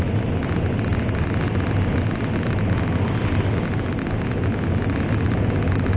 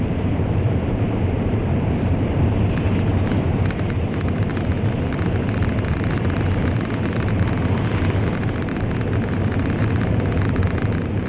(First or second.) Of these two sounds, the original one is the first